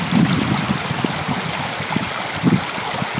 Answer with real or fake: real